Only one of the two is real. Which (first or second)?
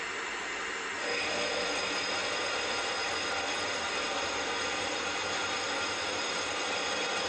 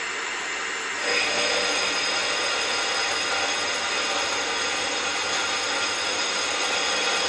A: second